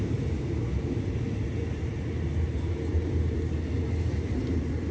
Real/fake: real